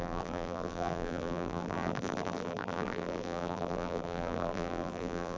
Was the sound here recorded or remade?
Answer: remade